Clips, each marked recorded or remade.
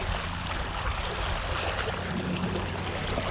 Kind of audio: recorded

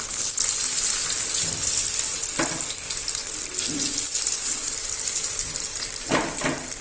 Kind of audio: recorded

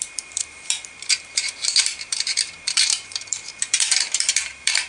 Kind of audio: remade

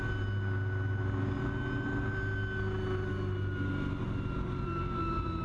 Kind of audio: recorded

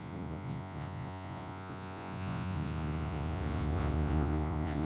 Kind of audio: remade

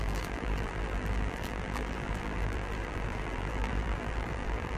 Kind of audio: remade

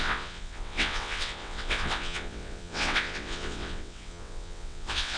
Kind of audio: remade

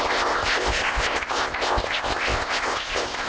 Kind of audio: remade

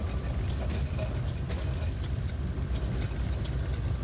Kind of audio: recorded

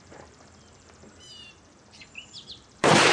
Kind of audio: remade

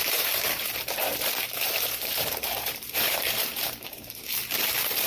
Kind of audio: remade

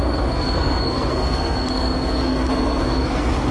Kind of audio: remade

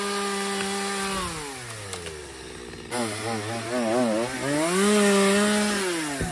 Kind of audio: recorded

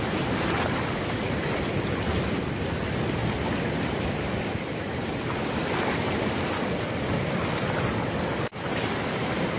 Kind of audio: recorded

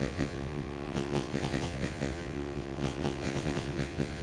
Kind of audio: remade